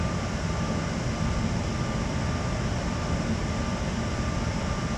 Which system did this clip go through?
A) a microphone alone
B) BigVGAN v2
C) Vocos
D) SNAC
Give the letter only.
B